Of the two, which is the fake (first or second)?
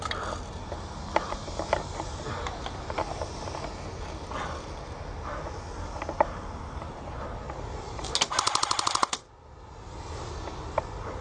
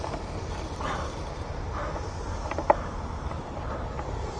second